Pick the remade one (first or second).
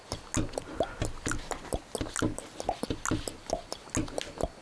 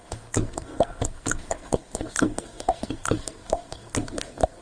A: second